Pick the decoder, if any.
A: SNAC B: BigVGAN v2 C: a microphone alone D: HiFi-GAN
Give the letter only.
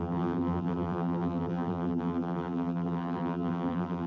B